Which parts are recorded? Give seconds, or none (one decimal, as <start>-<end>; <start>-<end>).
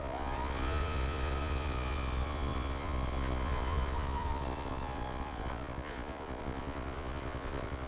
none